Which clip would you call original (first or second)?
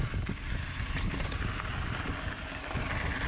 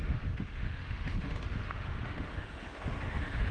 first